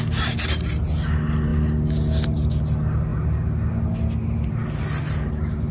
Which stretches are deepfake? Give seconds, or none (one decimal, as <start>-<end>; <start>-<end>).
none